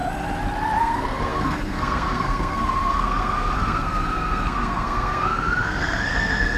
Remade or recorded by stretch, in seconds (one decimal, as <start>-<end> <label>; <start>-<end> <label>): 0.0-0.8 recorded; 0.8-6.6 remade